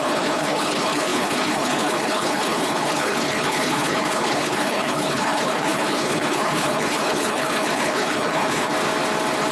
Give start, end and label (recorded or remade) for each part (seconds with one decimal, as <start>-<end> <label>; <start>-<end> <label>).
0.0-8.7 remade; 8.7-9.5 recorded

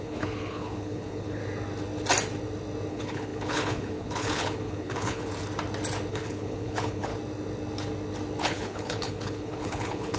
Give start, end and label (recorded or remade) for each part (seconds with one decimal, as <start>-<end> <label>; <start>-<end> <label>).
0.0-1.4 remade; 1.4-2.9 recorded; 2.9-5.3 remade; 5.3-6.1 recorded; 6.1-7.1 remade; 7.1-8.4 recorded; 8.4-10.2 remade

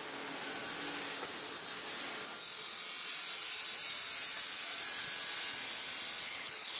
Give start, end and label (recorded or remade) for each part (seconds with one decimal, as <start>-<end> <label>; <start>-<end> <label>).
0.0-6.2 recorded; 6.2-6.8 remade

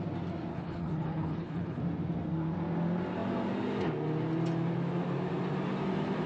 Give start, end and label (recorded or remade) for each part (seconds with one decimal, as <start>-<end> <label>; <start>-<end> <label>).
0.0-0.5 recorded; 0.5-1.8 remade; 1.8-6.3 recorded

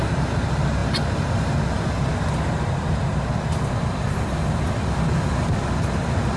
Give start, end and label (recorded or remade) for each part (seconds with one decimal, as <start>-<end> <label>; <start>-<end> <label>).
0.0-6.4 recorded

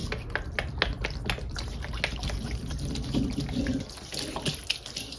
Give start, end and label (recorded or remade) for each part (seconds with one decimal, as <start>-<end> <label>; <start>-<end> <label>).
0.0-5.2 recorded

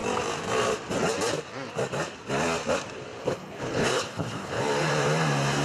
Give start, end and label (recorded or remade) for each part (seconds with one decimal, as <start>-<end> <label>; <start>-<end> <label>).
0.0-3.2 recorded; 3.2-4.6 remade; 4.6-5.6 recorded